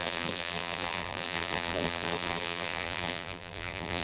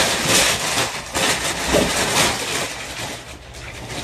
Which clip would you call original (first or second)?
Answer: second